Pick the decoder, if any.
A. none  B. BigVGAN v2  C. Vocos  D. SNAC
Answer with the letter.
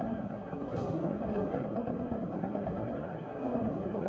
D